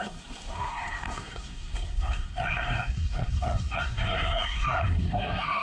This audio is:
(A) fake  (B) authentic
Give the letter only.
A